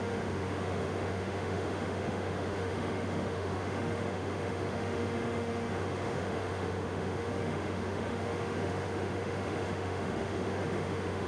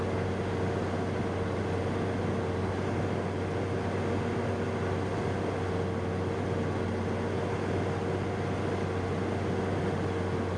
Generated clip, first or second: first